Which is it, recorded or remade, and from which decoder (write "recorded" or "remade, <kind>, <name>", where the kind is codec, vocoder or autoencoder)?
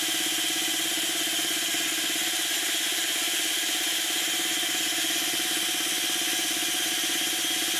recorded